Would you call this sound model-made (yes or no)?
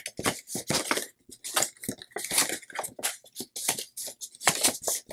no